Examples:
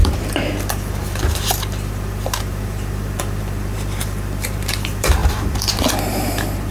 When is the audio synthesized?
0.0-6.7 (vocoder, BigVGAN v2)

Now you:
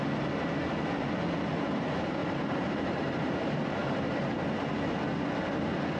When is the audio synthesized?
2.2-3.4 (vocoder, BigVGAN v2); 3.8-4.3

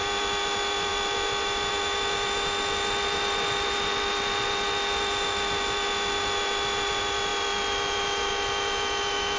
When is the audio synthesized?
none

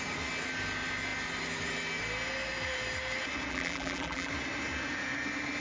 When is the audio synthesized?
3.5-4.3 (vocoder, BigVGAN v2)